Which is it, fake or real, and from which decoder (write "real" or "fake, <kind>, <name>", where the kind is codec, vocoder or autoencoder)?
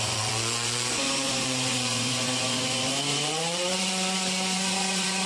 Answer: fake, vocoder, Vocos